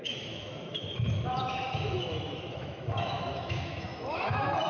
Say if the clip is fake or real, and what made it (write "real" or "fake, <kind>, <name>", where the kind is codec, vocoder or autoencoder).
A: fake, autoencoder, DAC-VAE